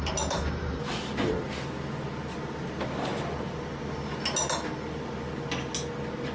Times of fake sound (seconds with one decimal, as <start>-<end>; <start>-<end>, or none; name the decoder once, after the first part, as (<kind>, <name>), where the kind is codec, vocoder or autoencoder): 3.1-3.8 (vocoder, BigVGAN v2)